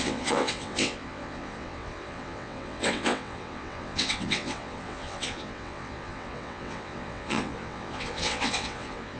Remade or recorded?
remade